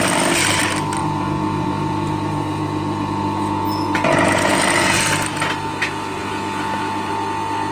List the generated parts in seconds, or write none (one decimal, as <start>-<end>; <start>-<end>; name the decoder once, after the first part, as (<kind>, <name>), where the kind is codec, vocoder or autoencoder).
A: 1.0-5.1 (vocoder, Vocos); 6.2-7.1